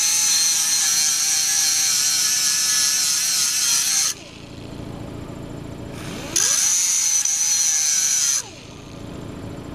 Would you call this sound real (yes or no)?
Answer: yes